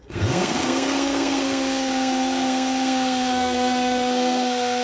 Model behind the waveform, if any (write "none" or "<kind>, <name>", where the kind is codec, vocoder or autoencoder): codec, SNAC